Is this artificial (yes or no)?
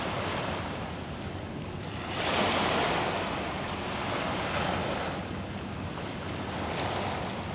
no